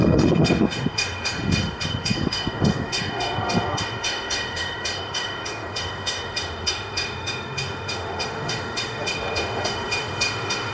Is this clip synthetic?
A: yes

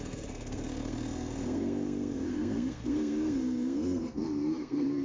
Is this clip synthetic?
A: yes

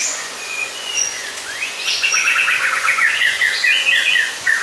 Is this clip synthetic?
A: yes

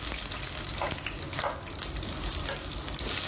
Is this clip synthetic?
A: no